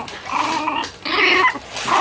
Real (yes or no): yes